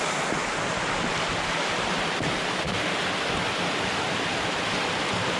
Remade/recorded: recorded